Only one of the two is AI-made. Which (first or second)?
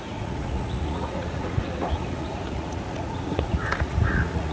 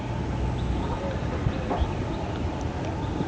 first